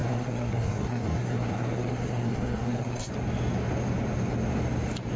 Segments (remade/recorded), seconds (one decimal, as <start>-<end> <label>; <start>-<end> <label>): 0.0-3.1 remade; 3.1-5.2 recorded